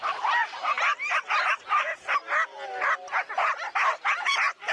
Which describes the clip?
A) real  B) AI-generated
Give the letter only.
A